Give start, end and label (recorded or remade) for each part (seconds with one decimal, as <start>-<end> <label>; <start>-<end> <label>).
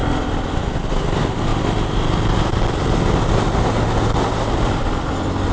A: 0.0-5.5 recorded